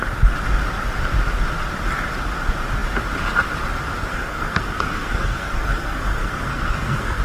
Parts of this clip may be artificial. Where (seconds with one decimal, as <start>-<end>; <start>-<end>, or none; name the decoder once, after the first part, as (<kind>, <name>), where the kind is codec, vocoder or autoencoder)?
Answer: 4.1-7.2 (codec, SNAC)